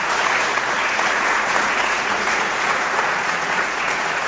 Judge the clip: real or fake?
fake